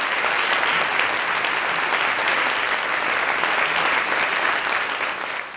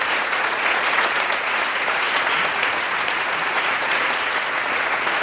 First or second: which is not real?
second